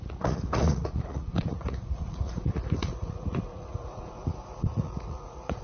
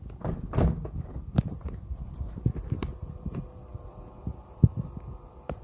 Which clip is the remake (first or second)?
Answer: first